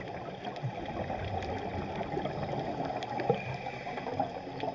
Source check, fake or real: real